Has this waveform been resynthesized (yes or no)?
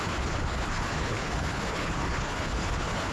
yes